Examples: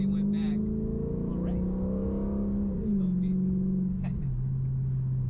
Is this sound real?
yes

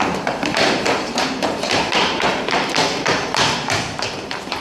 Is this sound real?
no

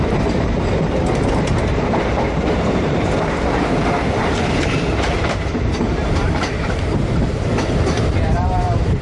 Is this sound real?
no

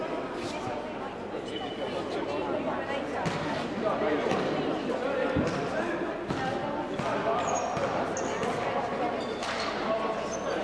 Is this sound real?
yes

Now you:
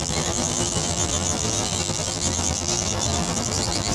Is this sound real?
no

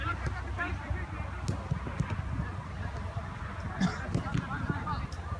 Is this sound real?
yes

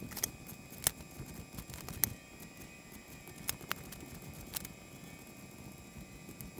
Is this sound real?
yes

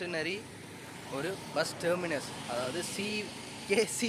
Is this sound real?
no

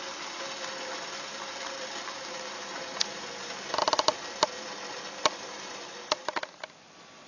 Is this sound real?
yes